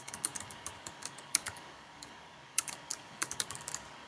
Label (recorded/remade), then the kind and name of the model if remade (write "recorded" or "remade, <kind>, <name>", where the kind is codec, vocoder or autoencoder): remade, codec, DAC